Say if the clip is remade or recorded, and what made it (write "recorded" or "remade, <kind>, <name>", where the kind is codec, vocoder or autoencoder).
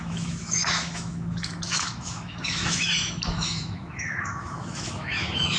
remade, autoencoder, DAC-VAE